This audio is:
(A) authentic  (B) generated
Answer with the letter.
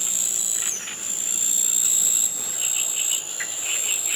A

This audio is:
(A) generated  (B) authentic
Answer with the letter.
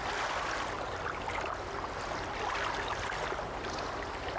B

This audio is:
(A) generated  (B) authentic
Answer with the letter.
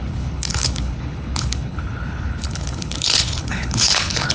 A